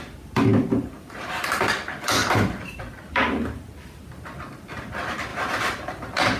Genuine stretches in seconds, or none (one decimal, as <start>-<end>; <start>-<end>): 0.0-0.5; 1.6-2.2; 2.8-5.3